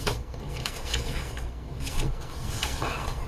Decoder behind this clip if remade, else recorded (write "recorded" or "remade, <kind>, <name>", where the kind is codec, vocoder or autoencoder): remade, codec, SNAC